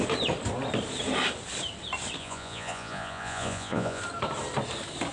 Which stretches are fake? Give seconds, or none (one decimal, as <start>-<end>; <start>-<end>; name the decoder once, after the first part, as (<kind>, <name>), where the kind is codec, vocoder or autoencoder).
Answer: 2.2-4.0 (vocoder, Vocos)